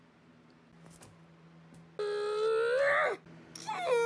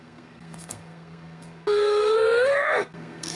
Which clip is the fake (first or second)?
second